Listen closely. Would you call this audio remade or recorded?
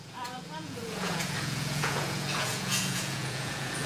remade